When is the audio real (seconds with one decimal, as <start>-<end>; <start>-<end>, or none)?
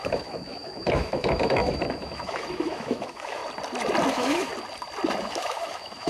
3.4-4.1; 4.5-5.2